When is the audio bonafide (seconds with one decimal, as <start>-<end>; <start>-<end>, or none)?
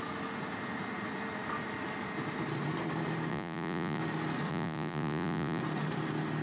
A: 0.0-3.3; 4.0-4.5; 5.6-6.4